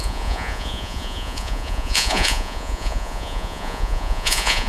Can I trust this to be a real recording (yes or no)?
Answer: no